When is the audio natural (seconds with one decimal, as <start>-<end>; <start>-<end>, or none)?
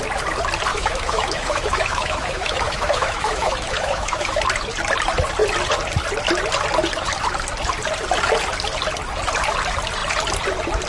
0.0-0.7; 4.4-10.9